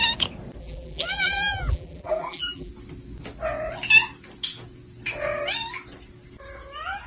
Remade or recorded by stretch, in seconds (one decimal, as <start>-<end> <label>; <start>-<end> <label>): 0.0-0.6 recorded; 0.6-2.7 remade; 2.7-7.1 recorded